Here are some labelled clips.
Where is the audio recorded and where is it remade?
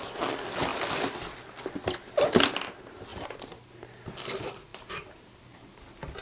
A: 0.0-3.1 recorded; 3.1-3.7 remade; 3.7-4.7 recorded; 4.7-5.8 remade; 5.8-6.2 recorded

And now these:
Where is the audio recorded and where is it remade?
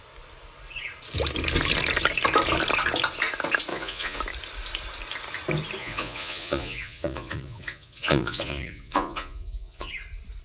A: 0.0-3.7 recorded; 3.7-4.2 remade; 4.2-5.8 recorded; 5.8-9.9 remade; 9.9-10.4 recorded